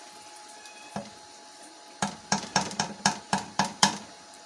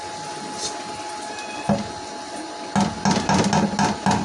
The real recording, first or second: second